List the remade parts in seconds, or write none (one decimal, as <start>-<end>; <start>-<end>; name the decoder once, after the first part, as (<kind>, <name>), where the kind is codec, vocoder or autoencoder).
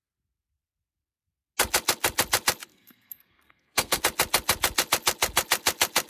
2.7-4.0 (codec, SNAC)